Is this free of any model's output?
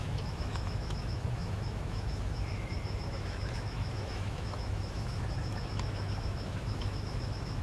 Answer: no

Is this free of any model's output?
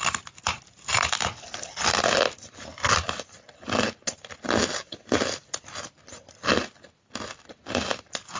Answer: yes